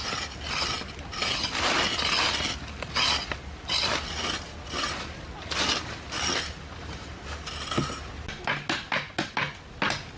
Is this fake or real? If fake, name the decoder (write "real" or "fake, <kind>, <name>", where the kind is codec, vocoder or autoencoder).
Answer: real